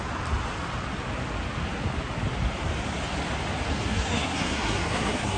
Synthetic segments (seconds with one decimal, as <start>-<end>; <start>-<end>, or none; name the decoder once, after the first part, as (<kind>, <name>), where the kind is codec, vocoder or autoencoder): 3.7-5.4 (codec, SNAC)